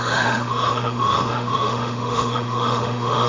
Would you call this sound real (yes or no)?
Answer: no